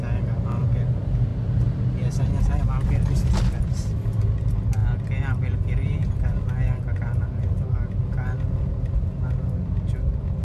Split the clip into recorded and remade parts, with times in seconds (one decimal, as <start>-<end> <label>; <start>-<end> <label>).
0.0-10.4 recorded